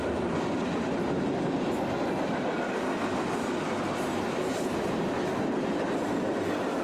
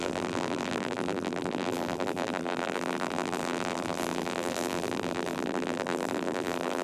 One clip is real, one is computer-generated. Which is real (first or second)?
first